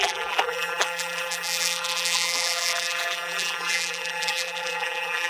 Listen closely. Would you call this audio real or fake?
fake